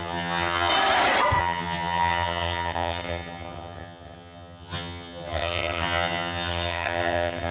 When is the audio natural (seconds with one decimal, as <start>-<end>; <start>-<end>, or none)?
0.7-1.4